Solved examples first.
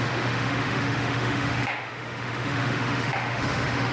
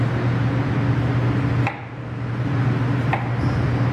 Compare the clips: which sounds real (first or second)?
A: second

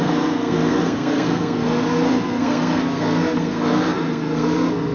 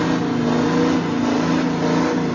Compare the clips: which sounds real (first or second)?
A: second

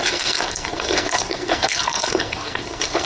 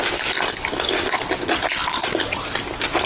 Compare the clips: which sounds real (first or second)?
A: second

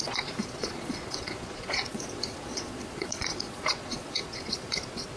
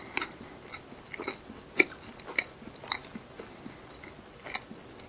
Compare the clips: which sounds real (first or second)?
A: second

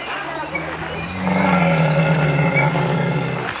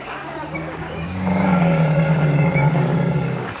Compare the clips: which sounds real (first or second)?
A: first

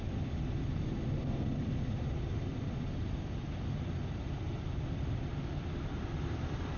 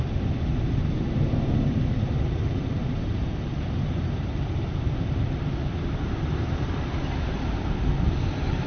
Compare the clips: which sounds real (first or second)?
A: first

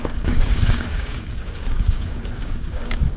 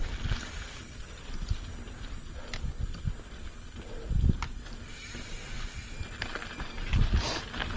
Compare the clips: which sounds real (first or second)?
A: second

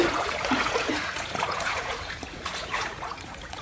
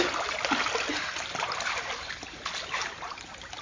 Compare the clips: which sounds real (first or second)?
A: second